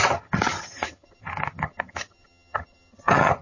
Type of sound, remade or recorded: remade